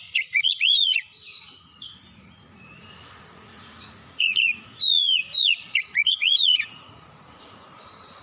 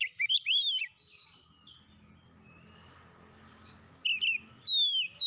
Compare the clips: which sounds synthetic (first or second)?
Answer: first